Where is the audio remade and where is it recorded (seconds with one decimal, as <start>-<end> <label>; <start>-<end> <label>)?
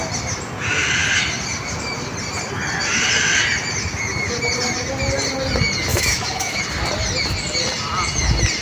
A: 0.0-5.9 recorded; 5.9-6.6 remade; 6.6-8.6 recorded